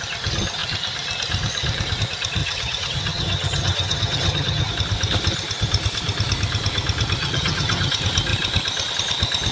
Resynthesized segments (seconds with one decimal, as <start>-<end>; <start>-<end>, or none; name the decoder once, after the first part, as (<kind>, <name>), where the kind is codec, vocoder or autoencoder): 2.4-4.7 (vocoder, HiFi-GAN); 7.2-7.9